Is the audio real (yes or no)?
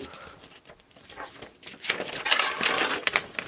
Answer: yes